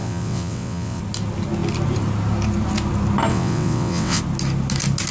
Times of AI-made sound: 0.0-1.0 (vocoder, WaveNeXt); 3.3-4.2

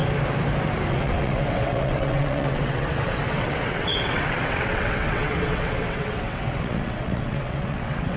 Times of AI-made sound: 0.9-8.2 (vocoder, WaveNeXt)